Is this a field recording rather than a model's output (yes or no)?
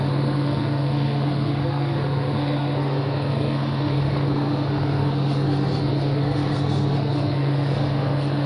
no